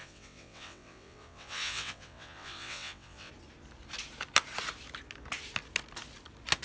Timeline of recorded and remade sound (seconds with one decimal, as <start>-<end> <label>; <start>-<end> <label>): 0.0-3.3 remade; 3.3-6.6 recorded